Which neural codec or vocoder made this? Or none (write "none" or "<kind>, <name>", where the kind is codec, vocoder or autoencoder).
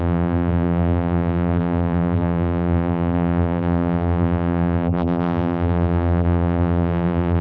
vocoder, BigVGAN v2